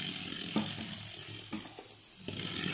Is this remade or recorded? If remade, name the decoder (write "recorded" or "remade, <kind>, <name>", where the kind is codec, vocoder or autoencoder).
recorded